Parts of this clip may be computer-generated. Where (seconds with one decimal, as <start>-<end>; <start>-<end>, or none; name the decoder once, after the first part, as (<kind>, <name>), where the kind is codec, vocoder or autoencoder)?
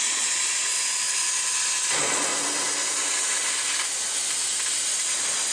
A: 0.0-0.7 (vocoder, Vocos); 1.9-2.3